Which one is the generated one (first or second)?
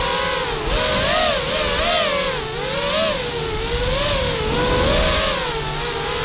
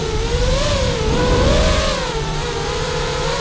second